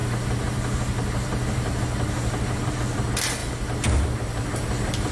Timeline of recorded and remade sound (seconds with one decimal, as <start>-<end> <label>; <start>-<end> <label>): 0.0-2.7 remade; 2.7-3.4 recorded; 3.4-5.1 remade

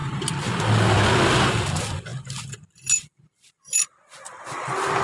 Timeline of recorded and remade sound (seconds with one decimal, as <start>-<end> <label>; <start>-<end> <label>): 0.0-5.0 recorded

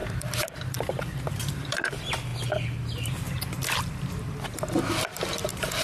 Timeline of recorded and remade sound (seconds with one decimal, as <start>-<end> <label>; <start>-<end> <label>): 0.0-2.3 remade; 2.3-4.8 recorded; 4.8-5.8 remade